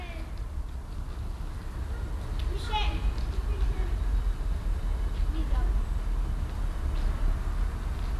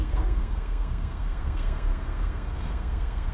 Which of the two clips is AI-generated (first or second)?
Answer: second